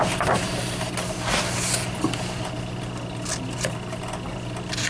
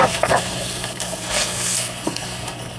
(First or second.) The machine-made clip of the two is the second